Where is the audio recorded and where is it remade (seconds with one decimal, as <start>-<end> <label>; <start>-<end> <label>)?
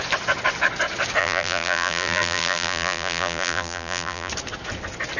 0.0-1.2 recorded; 1.2-4.3 remade; 4.3-5.2 recorded